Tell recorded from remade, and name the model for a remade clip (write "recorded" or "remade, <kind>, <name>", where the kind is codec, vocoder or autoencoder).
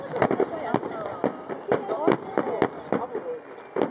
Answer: recorded